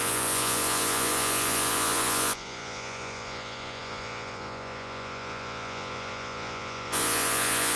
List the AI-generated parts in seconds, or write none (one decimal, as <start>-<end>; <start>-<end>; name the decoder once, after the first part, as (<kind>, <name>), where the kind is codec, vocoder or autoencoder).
0.0-7.8 (vocoder, Vocos)

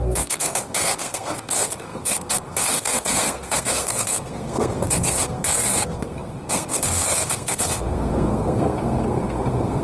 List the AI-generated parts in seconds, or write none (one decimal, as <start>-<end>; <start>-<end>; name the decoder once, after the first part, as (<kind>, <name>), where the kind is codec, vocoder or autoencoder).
0.0-9.8 (codec, SNAC)